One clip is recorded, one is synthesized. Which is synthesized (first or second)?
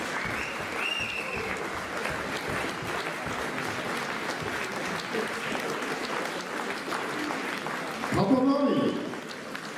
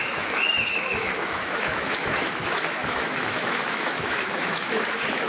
second